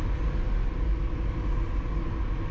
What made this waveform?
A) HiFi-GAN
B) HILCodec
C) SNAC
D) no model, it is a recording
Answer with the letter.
D